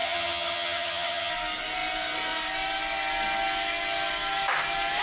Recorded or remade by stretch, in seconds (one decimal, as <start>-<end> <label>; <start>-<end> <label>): 0.0-1.3 remade; 1.3-5.0 recorded